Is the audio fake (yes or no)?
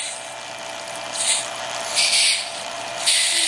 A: no